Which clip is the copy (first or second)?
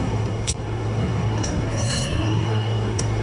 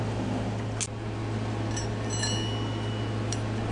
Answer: first